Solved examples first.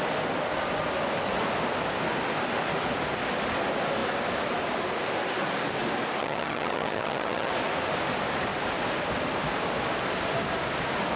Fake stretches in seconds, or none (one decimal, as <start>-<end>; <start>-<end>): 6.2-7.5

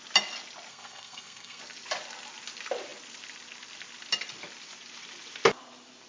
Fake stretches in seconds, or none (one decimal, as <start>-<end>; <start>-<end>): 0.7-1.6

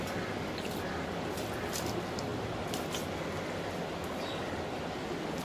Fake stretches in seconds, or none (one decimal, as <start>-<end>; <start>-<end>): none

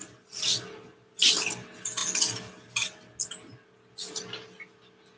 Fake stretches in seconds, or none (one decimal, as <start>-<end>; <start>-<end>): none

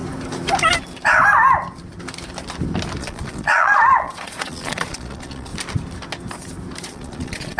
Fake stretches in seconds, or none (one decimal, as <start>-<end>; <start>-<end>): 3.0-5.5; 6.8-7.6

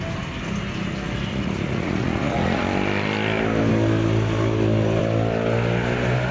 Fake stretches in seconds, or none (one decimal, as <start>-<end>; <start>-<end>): 1.3-2.6